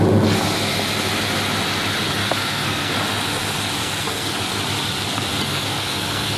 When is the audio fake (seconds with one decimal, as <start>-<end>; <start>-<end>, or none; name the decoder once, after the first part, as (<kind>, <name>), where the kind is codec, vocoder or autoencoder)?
2.2-2.9 (codec, SNAC); 3.8-4.4; 5.5-6.4